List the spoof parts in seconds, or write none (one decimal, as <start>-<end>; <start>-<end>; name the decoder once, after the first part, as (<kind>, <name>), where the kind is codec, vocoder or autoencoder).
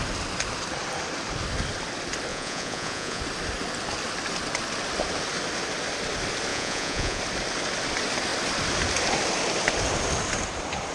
2.3-3.2 (vocoder, Vocos); 6.5-7.2